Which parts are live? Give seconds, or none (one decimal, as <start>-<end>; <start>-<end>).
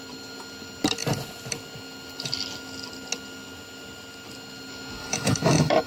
0.0-5.0